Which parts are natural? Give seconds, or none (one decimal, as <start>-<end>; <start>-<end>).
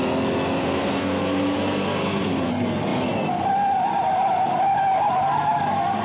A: 0.0-0.6; 2.5-6.0